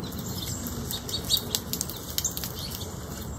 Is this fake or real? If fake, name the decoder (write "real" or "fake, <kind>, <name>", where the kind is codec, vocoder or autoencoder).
real